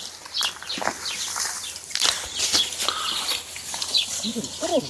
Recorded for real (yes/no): yes